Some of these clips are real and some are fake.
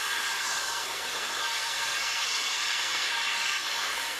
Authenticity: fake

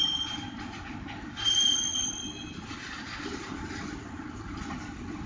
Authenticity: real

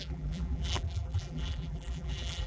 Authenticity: fake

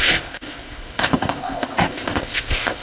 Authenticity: fake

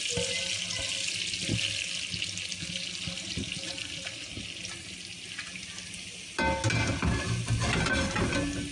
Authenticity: real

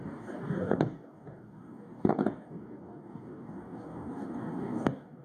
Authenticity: fake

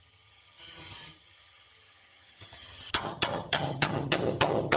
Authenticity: fake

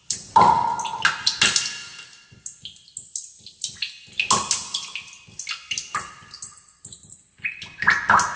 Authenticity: real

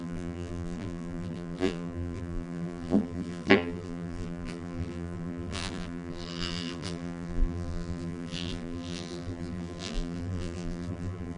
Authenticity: fake